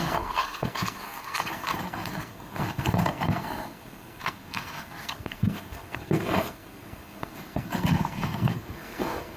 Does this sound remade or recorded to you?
remade